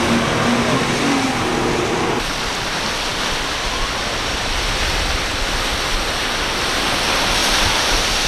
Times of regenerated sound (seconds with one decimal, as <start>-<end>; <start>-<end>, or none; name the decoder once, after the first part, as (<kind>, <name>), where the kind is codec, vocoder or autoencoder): 7.4-7.9 (vocoder, BigVGAN v2)